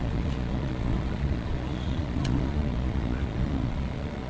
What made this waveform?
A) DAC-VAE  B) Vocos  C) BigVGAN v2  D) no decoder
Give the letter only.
B